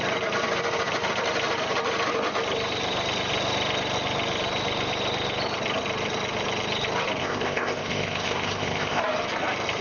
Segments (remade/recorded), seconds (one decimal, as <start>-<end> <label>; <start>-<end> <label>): 0.0-7.2 recorded; 7.2-9.0 remade; 9.0-9.8 recorded